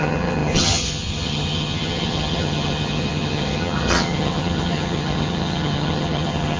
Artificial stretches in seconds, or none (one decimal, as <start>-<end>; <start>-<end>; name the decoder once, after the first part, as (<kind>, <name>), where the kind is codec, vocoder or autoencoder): 0.0-6.6 (vocoder, HiFi-GAN)